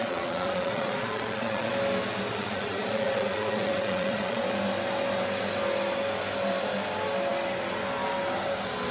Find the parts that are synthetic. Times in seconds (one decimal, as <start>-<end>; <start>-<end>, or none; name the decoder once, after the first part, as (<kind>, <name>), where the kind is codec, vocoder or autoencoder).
0.0-1.7 (vocoder, Vocos); 2.3-4.4